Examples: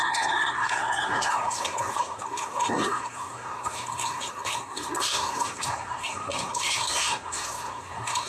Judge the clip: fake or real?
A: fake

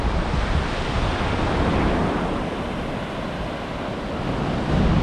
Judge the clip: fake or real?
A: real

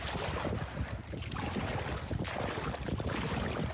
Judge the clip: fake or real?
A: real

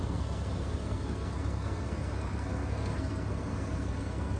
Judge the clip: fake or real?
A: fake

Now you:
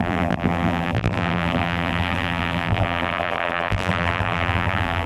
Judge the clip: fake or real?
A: fake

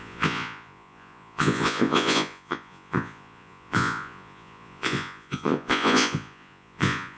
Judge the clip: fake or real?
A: fake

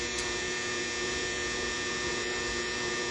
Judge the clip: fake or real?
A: fake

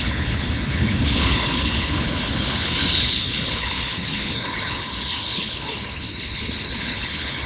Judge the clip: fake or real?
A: fake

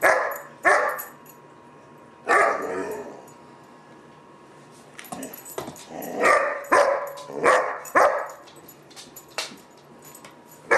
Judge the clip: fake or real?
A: fake